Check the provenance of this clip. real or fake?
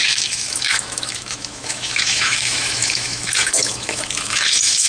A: fake